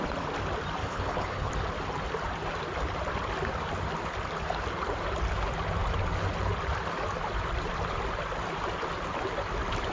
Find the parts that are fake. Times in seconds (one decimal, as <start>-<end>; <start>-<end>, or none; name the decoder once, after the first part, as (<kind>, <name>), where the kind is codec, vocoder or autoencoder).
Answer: 0.8-1.5 (codec, HILCodec)